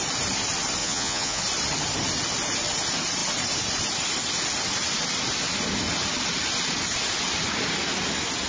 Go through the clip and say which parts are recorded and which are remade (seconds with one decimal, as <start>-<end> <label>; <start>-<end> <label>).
0.0-0.8 recorded; 0.8-1.4 remade; 1.4-8.5 recorded